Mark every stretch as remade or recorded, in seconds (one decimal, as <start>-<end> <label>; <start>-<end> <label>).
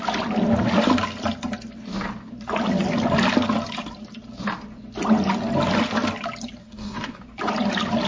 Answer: 0.0-6.6 recorded; 6.6-7.2 remade; 7.2-8.1 recorded